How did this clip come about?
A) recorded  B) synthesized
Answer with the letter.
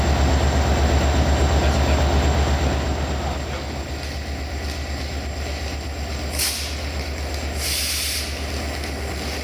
A